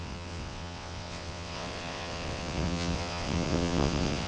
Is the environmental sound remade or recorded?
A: remade